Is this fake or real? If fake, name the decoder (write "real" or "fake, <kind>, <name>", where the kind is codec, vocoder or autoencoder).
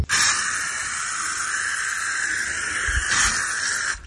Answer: real